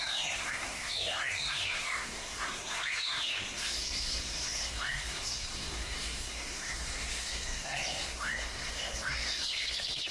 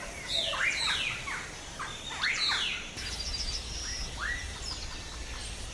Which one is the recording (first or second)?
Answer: second